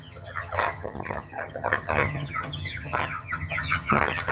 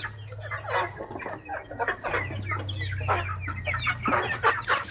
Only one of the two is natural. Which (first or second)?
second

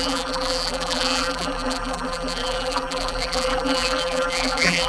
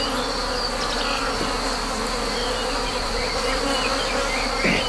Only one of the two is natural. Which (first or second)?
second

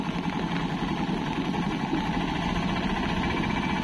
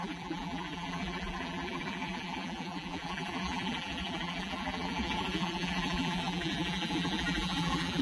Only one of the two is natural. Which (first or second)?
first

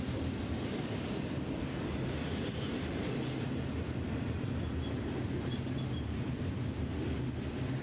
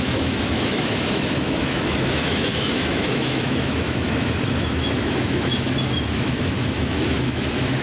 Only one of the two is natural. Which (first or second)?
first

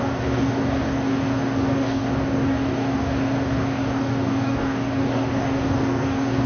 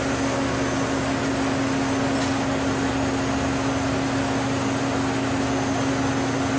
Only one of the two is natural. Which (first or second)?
second